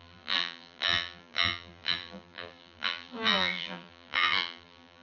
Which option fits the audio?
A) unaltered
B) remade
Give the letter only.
B